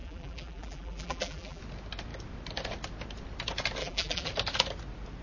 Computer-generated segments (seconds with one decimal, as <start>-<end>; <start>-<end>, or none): 0.0-1.6; 3.8-4.3